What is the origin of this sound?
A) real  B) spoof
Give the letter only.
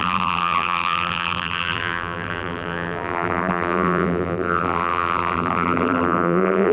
B